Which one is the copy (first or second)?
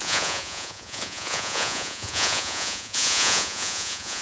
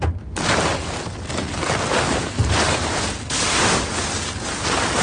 first